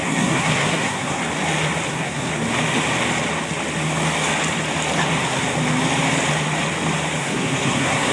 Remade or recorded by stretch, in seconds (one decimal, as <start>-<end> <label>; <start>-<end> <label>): 0.0-1.2 remade; 1.2-1.9 recorded; 1.9-2.3 remade; 2.3-7.2 recorded; 7.2-8.1 remade